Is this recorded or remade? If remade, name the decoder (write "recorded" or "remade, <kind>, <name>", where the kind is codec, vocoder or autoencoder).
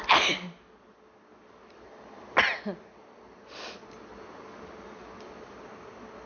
recorded